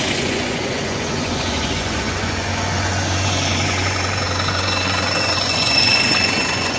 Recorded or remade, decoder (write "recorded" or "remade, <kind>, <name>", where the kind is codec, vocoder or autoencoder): remade, vocoder, Vocos